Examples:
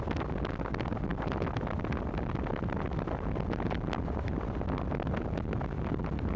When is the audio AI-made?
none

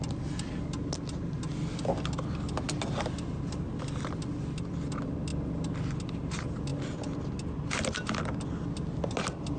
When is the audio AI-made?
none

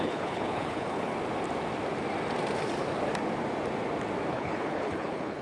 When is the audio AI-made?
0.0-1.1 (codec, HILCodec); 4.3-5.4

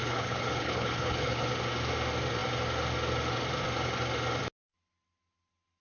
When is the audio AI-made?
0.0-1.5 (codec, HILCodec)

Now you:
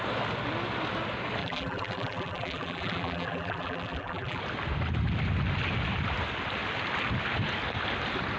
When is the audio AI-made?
1.4-4.4 (vocoder, BigVGAN v2)

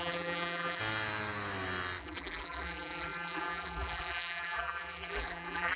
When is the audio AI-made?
0.0-0.8 (vocoder, BigVGAN v2); 2.0-5.8

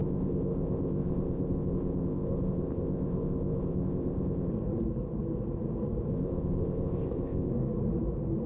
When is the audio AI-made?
0.0-4.5 (codec, ZipCodec); 6.1-7.5